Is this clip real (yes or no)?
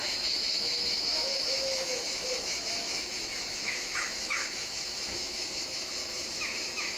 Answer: no